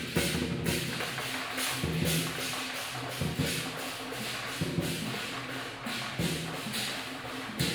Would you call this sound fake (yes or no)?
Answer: no